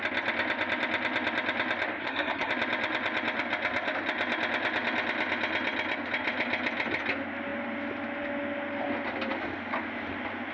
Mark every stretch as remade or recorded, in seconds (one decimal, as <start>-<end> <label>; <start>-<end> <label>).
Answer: 0.0-2.0 recorded; 2.0-2.5 remade; 2.5-10.5 recorded